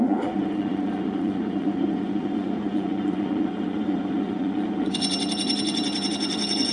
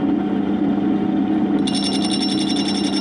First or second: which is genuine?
second